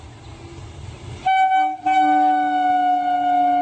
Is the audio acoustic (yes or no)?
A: yes